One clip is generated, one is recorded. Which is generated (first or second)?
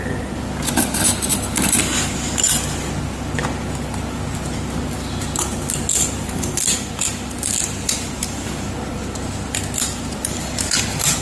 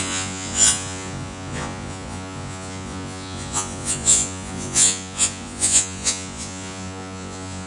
second